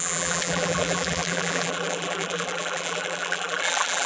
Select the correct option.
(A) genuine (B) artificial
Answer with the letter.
B